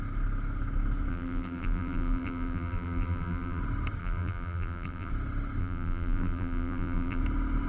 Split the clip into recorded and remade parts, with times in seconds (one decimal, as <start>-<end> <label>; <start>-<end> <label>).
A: 0.0-1.1 recorded; 1.1-3.6 remade; 3.6-4.0 recorded; 4.0-5.1 remade; 5.1-5.6 recorded; 5.6-7.2 remade; 7.2-7.7 recorded